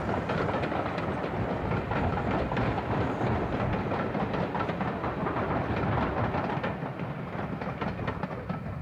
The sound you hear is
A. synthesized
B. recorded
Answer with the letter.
B